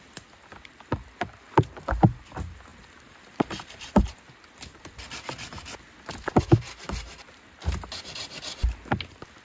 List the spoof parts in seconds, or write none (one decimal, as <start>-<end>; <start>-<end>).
none